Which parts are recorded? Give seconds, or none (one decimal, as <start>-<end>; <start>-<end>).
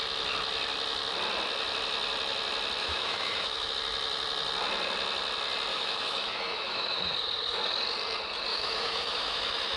0.0-2.8; 3.7-5.7; 7.1-8.5